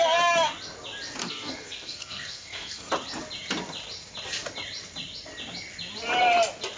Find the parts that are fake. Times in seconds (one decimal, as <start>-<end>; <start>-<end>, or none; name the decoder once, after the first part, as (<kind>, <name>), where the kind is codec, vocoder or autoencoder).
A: 1.2-2.9 (codec, SNAC)